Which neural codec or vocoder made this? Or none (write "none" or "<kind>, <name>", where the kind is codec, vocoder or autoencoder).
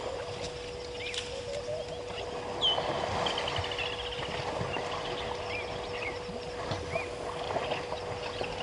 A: none